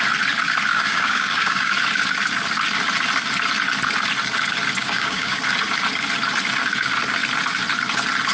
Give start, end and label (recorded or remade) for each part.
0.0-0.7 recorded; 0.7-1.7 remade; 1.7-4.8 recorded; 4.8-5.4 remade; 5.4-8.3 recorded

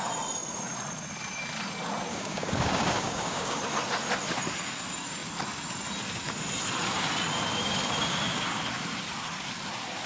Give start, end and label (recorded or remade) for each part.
0.0-2.1 recorded; 2.1-3.6 remade; 3.6-10.1 recorded

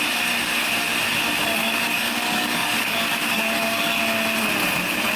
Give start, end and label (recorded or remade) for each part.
0.0-1.6 recorded; 1.6-4.0 remade; 4.0-5.2 recorded

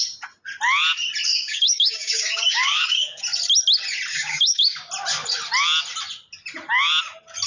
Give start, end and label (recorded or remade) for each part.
0.0-1.3 recorded; 1.3-3.2 remade; 3.2-4.1 recorded; 4.1-4.9 remade; 4.9-7.5 recorded

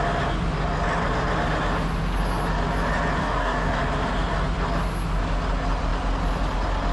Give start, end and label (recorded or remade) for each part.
0.0-3.2 recorded; 3.2-3.8 remade; 3.8-6.9 recorded